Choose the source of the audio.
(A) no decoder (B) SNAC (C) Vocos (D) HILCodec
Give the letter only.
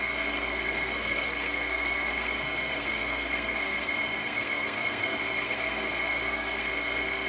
B